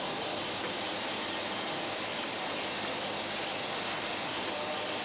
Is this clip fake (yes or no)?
no